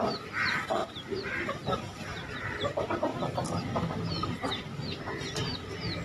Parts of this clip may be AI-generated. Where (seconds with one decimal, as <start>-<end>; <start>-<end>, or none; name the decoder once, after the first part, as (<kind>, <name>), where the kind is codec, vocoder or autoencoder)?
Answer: 0.8-1.4 (vocoder, BigVGAN v2)